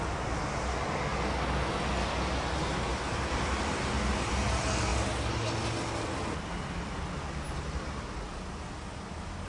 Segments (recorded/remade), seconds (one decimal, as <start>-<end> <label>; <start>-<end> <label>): 0.0-2.9 recorded; 2.9-4.3 remade; 4.3-9.5 recorded